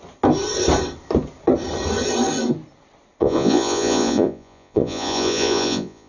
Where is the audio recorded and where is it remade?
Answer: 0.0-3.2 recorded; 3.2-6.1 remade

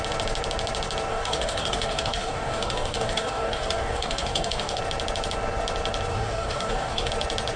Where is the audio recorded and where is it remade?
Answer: 0.0-1.1 recorded; 1.1-4.8 remade; 4.8-6.1 recorded; 6.1-7.1 remade; 7.1-7.6 recorded

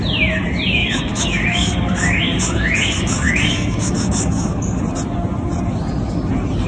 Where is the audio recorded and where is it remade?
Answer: 0.0-0.8 recorded; 0.8-4.8 remade; 4.8-6.7 recorded

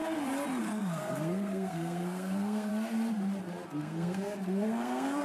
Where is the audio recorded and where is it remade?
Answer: 0.0-0.6 recorded; 0.6-2.7 remade; 2.7-3.8 recorded; 3.8-5.2 remade